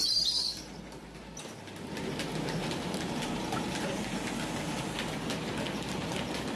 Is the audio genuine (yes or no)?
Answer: yes